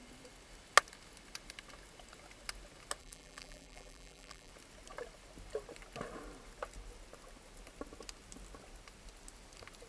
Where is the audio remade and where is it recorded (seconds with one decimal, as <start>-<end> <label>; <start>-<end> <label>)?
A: 0.0-3.0 recorded; 3.0-4.5 remade; 4.5-9.9 recorded